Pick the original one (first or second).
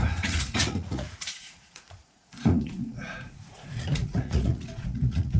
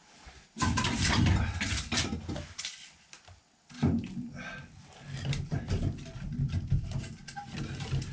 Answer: second